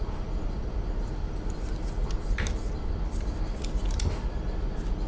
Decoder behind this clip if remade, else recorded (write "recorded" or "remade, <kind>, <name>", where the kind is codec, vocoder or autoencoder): recorded